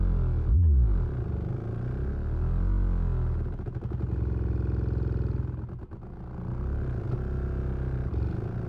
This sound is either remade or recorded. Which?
recorded